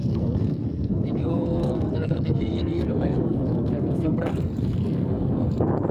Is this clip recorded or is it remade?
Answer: remade